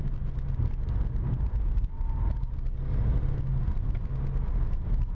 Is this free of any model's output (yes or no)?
yes